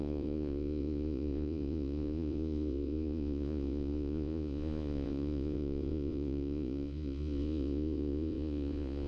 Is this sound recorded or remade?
remade